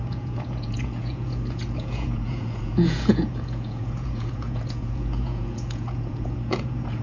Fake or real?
fake